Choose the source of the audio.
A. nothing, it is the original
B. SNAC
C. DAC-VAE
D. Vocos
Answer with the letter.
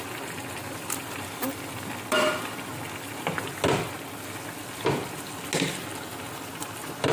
A